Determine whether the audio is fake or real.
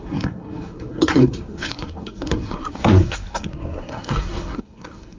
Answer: fake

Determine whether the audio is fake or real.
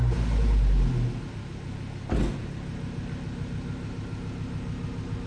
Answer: real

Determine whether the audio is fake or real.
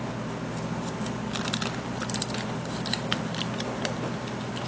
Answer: real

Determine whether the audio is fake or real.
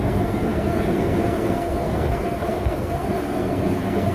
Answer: fake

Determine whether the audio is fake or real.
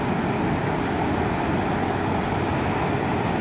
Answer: real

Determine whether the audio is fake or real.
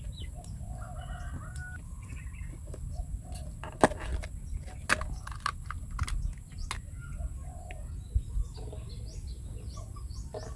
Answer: real